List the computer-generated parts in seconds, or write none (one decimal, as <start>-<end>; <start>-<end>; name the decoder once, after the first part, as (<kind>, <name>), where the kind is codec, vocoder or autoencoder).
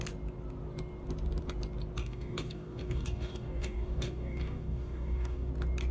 2.0-5.5 (codec, DAC)